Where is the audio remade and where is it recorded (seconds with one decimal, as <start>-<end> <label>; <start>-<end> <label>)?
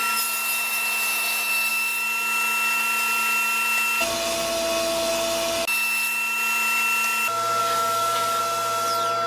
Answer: 0.0-7.6 recorded; 7.6-8.4 remade; 8.4-9.3 recorded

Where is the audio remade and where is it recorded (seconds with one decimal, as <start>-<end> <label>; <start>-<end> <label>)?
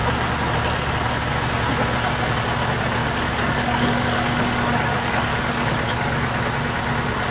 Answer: 0.0-3.0 recorded; 3.0-6.4 remade; 6.4-7.3 recorded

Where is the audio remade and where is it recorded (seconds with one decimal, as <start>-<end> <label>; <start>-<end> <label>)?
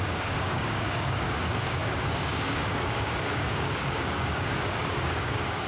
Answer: 0.0-5.7 remade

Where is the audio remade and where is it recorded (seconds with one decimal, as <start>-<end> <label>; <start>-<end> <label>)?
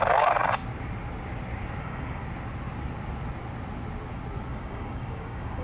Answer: 0.0-0.6 remade; 0.6-1.8 recorded; 1.8-2.2 remade; 2.2-4.5 recorded; 4.5-5.6 remade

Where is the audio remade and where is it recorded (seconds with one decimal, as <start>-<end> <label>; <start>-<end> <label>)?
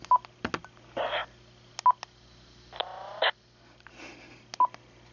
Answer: 0.0-5.1 recorded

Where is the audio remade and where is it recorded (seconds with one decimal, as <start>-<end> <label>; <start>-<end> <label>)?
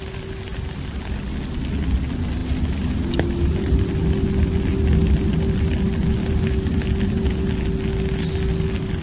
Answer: 0.0-9.0 recorded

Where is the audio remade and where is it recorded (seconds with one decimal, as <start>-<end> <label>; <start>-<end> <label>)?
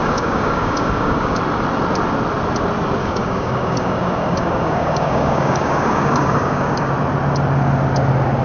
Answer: 0.0-1.4 remade; 1.4-3.0 recorded; 3.0-6.9 remade; 6.9-8.4 recorded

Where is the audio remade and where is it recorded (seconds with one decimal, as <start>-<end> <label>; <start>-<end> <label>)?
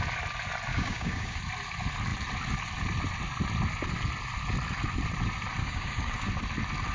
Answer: 0.0-0.7 recorded; 0.7-1.4 remade; 1.4-5.6 recorded; 5.6-6.3 remade; 6.3-6.9 recorded